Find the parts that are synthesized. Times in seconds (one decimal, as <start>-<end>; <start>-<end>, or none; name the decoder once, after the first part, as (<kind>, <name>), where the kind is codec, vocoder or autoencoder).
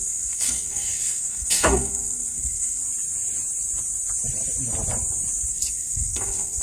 0.0-2.8 (codec, SNAC); 5.5-6.6